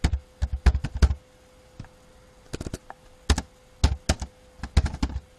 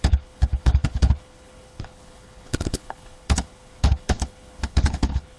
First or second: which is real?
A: first